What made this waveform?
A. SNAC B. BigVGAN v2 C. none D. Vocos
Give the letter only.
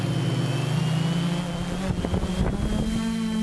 C